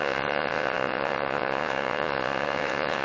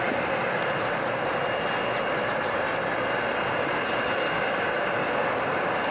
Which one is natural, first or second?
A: second